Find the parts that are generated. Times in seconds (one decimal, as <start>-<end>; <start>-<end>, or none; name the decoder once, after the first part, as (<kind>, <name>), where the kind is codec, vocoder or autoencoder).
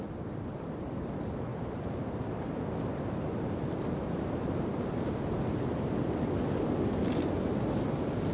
1.5-2.3 (vocoder, BigVGAN v2); 2.9-5.8